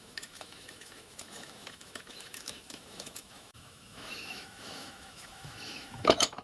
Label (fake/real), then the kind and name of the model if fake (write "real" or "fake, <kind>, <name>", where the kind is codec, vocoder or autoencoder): fake, autoencoder, DAC-VAE